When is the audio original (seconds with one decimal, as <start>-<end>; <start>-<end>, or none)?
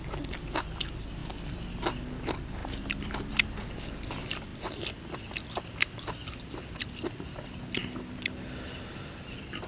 0.0-9.7